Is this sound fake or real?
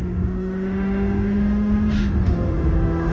fake